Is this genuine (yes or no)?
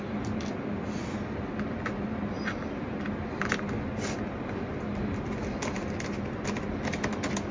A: yes